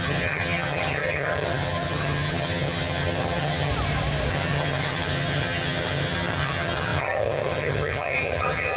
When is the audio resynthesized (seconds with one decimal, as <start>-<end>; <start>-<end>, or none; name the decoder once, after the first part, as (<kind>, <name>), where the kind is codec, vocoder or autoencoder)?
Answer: 0.0-3.7 (vocoder, HiFi-GAN); 4.3-8.8